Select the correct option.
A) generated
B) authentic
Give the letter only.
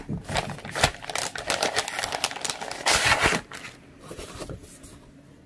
B